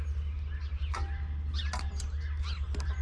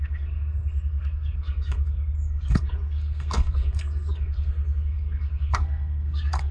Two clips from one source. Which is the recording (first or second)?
first